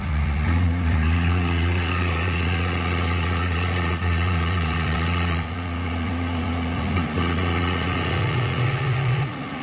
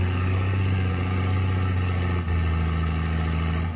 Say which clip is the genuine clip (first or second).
second